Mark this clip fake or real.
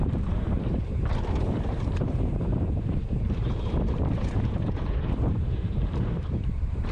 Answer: fake